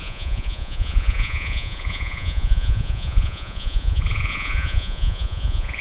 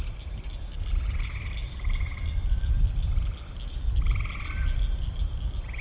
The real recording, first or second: second